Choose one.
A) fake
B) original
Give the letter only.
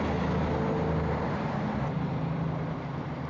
B